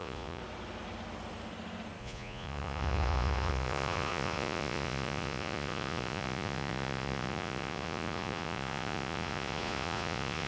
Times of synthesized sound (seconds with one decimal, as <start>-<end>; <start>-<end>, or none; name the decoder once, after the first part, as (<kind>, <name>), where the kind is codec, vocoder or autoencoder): 0.0-0.4 (vocoder, Vocos); 2.0-10.5